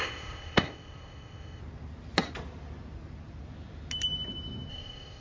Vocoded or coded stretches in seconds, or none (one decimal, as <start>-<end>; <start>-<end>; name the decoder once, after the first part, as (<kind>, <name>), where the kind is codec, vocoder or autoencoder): 0.0-1.6 (codec, ZipCodec); 4.7-5.2